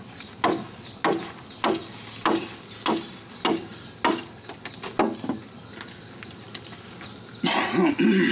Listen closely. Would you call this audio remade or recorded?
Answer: recorded